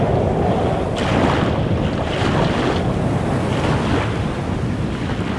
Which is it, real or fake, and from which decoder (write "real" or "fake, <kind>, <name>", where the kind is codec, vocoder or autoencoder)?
real